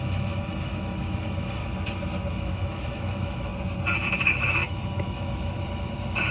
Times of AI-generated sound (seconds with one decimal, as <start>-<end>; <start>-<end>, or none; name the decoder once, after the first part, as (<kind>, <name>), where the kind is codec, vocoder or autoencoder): 0.0-1.6 (autoencoder, DAC-VAE); 2.3-3.5; 4.1-6.3